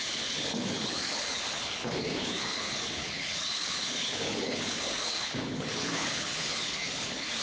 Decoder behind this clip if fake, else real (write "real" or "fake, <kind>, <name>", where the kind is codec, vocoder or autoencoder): fake, codec, HILCodec